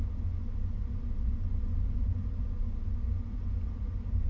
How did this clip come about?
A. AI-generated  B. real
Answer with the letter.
B